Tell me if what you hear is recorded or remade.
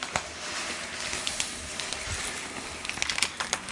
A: recorded